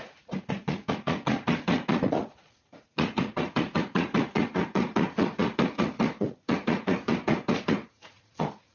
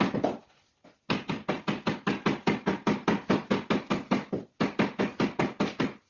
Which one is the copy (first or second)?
first